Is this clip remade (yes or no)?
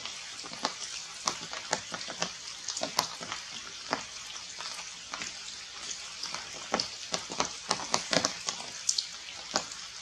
no